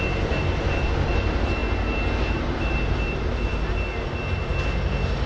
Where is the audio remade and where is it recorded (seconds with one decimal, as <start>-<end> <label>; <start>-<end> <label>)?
0.0-1.6 remade; 1.6-2.2 recorded; 2.2-3.5 remade; 3.5-5.3 recorded